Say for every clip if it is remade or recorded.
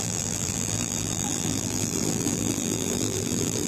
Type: remade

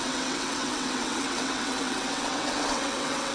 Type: remade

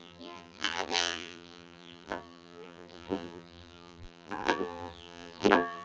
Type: remade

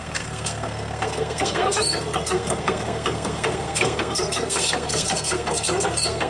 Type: remade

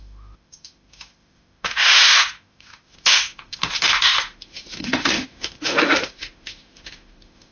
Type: remade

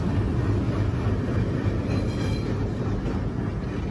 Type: recorded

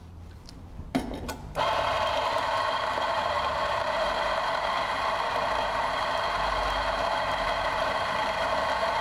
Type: remade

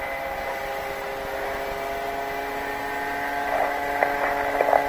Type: recorded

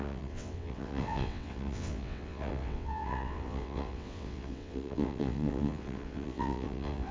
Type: remade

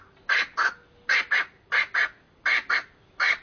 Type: recorded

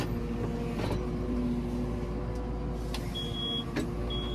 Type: recorded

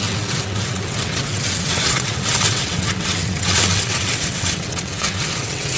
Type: remade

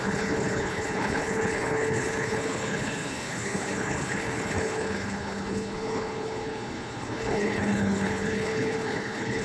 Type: remade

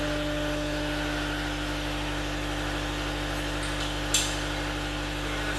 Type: recorded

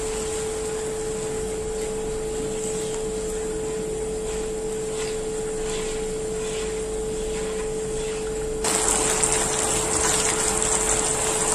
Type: recorded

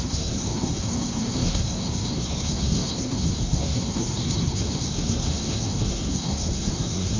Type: remade